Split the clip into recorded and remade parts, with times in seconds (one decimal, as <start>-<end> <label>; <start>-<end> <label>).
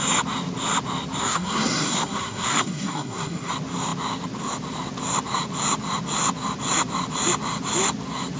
0.0-1.2 recorded; 1.2-3.5 remade; 3.5-8.4 recorded